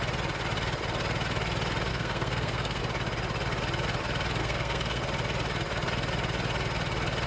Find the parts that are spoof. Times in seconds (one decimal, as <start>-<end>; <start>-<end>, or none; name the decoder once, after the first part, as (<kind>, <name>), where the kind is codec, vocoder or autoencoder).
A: 1.9-2.8 (codec, SNAC); 4.4-5.0